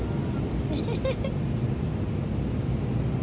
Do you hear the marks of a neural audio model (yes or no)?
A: no